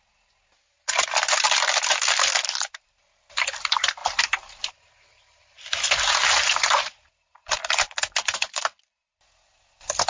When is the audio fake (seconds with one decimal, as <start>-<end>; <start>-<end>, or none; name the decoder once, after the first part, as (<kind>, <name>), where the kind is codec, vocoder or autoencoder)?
none